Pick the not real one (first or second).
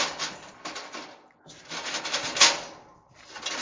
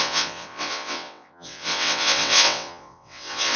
second